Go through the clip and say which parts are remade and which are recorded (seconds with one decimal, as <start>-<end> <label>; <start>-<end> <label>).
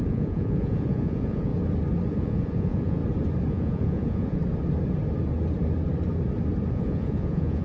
0.0-1.5 remade; 1.5-2.1 recorded; 2.1-3.0 remade; 3.0-3.5 recorded; 3.5-4.4 remade; 4.4-6.7 recorded; 6.7-7.6 remade